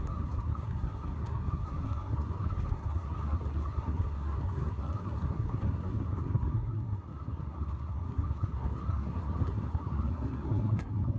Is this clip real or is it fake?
fake